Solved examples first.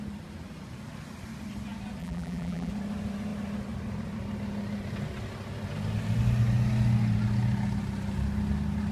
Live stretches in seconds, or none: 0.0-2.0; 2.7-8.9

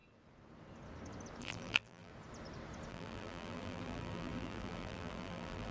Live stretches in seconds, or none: 0.0-1.4; 2.1-2.9

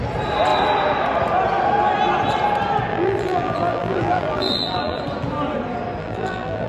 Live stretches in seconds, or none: 0.0-2.9; 5.0-6.0

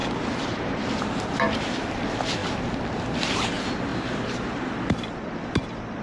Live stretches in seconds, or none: 2.0-3.9; 4.7-6.0

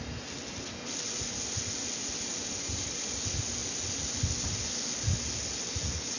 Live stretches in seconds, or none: 0.0-6.2

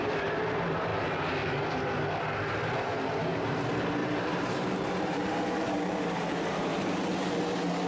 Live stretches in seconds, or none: 0.0-2.9; 3.6-4.0; 7.4-7.9

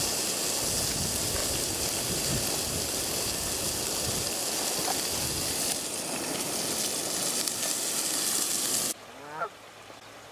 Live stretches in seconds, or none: 0.0-10.3

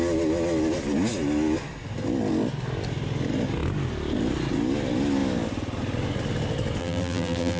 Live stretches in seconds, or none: 0.0-6.8